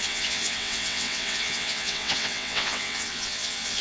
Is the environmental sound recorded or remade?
remade